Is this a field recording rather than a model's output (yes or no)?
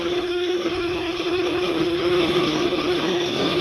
no